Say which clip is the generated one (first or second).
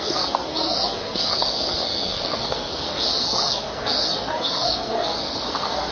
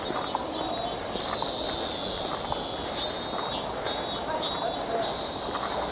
first